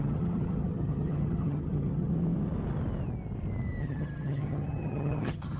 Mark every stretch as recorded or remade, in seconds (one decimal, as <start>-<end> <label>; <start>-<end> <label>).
0.0-2.1 remade; 2.1-3.8 recorded; 3.8-5.6 remade